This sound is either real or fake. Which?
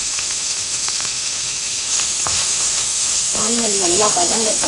fake